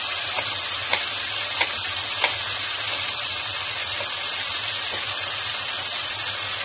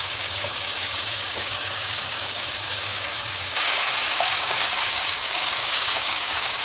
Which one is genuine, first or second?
first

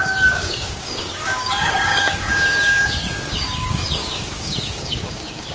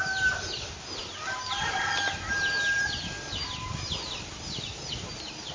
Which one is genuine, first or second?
second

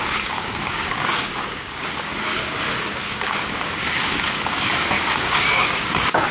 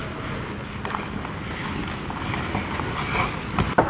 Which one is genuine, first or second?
second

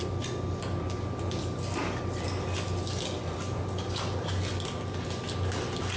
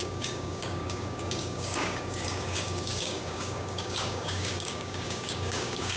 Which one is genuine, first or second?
first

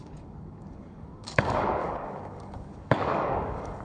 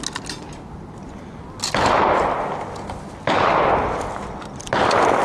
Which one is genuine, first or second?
second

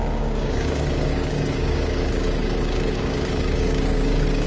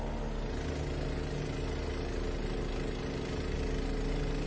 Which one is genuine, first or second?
second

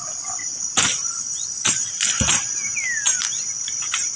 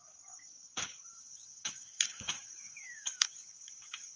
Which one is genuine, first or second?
first